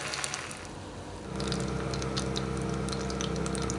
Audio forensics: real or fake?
real